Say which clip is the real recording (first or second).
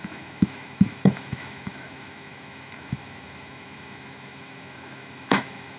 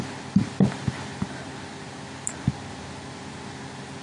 second